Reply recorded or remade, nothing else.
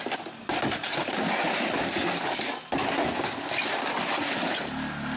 recorded